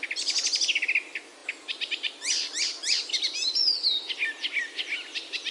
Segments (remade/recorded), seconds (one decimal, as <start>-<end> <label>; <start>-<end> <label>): 0.0-5.5 recorded